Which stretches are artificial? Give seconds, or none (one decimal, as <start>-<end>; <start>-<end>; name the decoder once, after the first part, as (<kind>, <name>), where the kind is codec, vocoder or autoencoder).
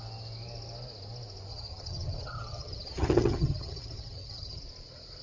1.5-4.6 (vocoder, HiFi-GAN)